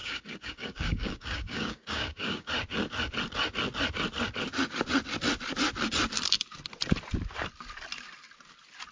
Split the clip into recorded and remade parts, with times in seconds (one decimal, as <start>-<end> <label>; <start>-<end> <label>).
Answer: 0.0-2.5 remade; 2.5-8.9 recorded